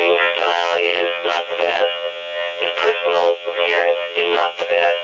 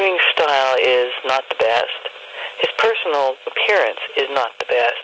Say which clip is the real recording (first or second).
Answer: second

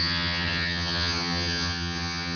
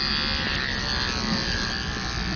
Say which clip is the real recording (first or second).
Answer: second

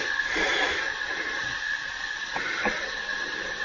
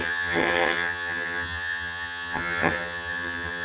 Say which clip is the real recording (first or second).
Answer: first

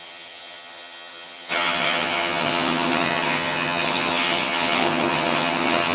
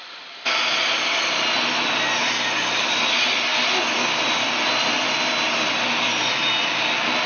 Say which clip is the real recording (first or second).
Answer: second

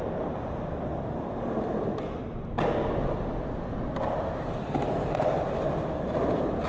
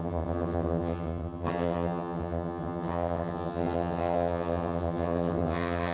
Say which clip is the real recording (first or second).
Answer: first